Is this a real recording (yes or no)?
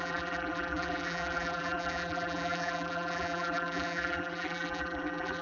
no